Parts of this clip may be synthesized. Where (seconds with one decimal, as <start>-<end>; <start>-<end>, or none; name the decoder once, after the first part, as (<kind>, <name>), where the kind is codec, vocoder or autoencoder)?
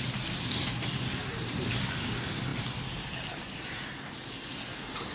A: 1.2-1.9 (vocoder, BigVGAN v2)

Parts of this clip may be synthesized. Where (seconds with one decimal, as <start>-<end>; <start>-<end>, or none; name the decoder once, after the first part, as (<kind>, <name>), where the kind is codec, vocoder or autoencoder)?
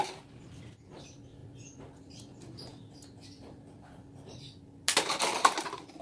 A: none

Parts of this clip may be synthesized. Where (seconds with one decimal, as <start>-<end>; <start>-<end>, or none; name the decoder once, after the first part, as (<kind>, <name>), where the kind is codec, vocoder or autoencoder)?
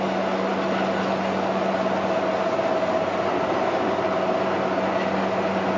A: none